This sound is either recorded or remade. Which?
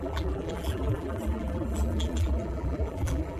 remade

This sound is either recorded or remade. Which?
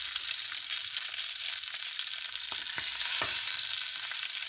recorded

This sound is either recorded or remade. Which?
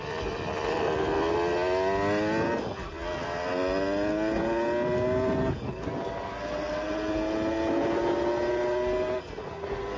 recorded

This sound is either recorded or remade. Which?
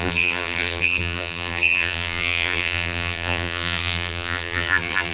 remade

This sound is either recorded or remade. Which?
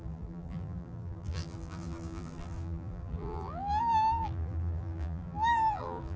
remade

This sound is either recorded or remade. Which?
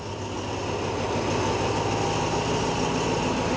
recorded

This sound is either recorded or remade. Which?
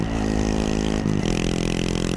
recorded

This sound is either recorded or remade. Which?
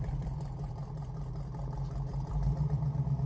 remade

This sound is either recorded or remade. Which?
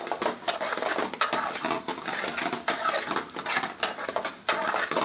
recorded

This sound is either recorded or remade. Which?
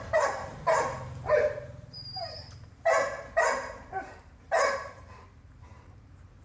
remade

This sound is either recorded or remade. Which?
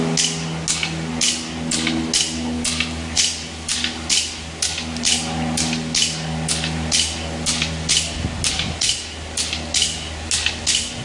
recorded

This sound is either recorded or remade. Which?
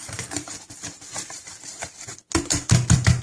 remade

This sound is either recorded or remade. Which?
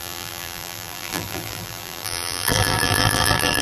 remade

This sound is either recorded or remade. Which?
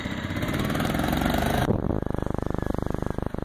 remade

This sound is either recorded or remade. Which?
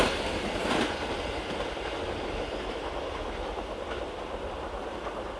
recorded